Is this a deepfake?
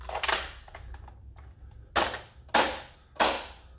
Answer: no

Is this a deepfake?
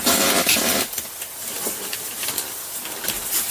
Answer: no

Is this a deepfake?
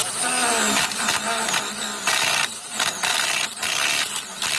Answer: no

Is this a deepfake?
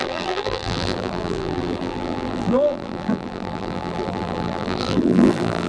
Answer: yes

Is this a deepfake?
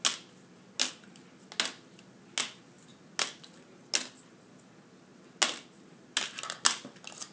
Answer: no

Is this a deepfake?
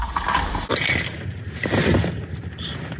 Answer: no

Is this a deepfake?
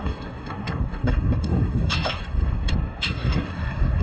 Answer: yes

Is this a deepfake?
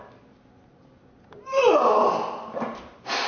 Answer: no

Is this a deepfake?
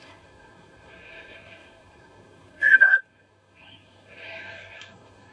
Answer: yes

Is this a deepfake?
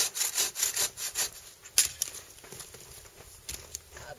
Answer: no